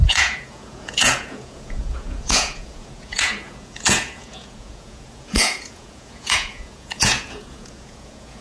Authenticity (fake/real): fake